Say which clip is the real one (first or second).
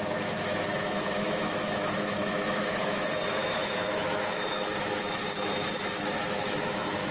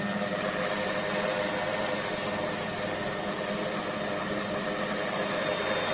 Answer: second